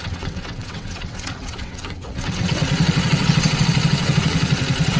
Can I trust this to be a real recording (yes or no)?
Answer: no